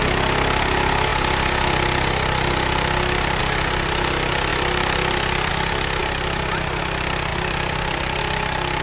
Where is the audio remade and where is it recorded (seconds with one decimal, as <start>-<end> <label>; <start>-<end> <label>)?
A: 0.0-4.5 recorded; 4.5-5.5 remade; 5.5-7.3 recorded; 7.3-8.2 remade; 8.2-8.8 recorded